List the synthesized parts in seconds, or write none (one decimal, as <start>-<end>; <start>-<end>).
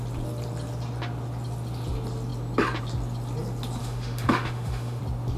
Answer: 3.8-5.0